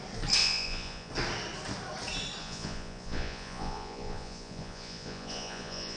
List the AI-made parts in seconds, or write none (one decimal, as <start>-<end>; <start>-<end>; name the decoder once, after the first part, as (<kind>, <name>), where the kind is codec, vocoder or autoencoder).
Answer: 0.4-1.1 (vocoder, Vocos); 2.4-6.0